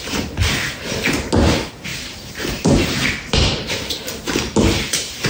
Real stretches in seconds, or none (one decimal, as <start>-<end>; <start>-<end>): 0.0-1.9; 3.7-5.3